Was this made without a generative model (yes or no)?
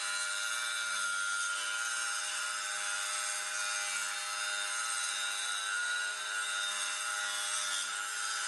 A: yes